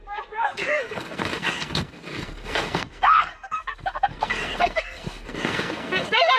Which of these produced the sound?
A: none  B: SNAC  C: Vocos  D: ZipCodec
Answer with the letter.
B